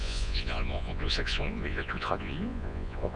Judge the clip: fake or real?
fake